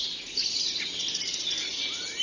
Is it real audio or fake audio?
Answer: real